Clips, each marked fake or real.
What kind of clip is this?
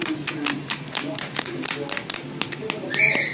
real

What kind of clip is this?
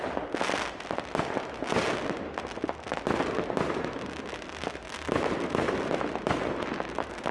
real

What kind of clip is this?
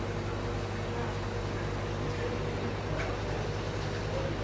real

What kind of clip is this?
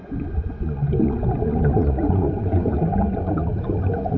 fake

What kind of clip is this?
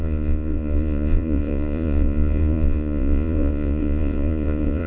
fake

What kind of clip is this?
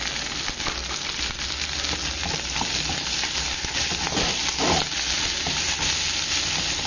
real